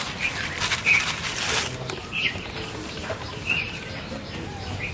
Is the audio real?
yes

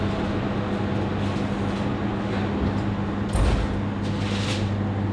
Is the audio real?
yes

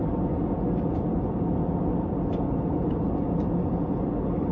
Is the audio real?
yes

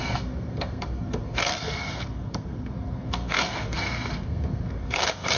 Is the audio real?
no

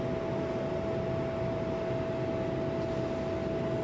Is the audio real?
yes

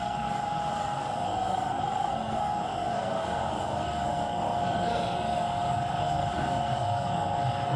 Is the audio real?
no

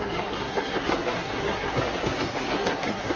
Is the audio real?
no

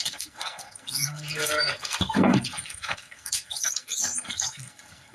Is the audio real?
no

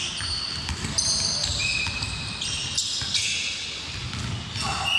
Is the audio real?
yes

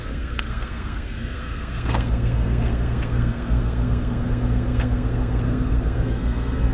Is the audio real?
no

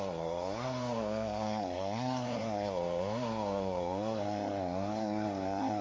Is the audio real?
no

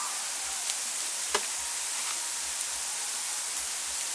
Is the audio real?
yes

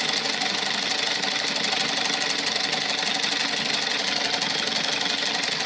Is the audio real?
yes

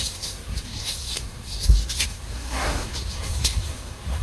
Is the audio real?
no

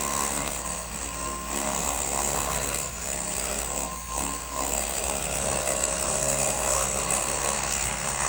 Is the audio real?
no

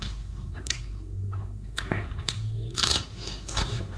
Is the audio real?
no